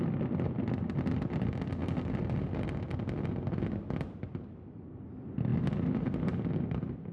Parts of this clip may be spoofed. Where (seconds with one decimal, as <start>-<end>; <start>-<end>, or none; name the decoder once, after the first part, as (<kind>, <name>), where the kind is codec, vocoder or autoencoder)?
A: none